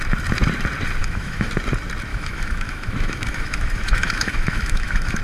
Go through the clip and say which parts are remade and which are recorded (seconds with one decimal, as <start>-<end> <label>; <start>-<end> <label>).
0.0-1.0 recorded; 1.0-1.5 remade; 1.5-2.1 recorded; 2.1-5.2 remade